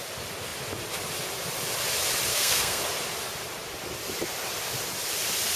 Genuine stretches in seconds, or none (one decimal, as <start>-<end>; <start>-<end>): 0.0-2.3; 2.8-5.6